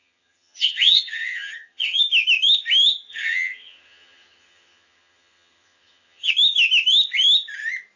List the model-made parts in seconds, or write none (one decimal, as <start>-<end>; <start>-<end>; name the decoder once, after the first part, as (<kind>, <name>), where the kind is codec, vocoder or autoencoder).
0.0-2.0 (vocoder, HiFi-GAN); 3.1-6.3